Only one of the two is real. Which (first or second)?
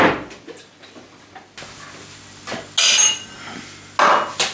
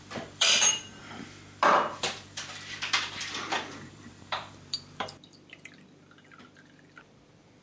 first